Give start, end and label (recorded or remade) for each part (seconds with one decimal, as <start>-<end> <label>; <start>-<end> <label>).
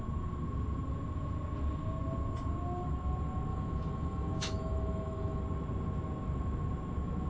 0.0-3.5 recorded; 3.5-5.4 remade; 5.4-7.3 recorded